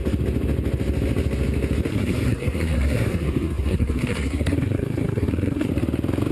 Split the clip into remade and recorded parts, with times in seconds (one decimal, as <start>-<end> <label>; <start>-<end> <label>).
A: 0.0-1.9 recorded; 1.9-5.7 remade; 5.7-6.3 recorded